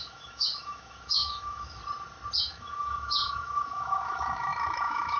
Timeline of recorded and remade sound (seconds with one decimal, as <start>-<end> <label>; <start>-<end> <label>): 0.0-1.8 remade; 1.8-2.4 recorded; 2.4-5.2 remade